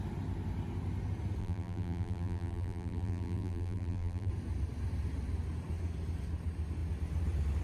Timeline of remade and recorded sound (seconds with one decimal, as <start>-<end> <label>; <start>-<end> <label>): 0.0-1.4 recorded; 1.4-4.3 remade; 4.3-7.6 recorded